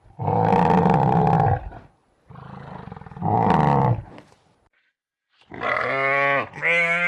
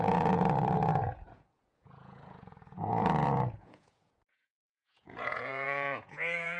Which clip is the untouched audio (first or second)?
first